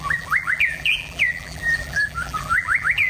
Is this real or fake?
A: fake